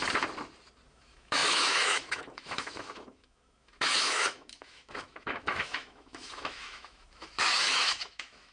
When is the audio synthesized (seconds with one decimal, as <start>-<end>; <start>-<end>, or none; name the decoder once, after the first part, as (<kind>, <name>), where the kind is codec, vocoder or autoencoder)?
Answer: 0.9-8.5 (autoencoder, DAC-VAE)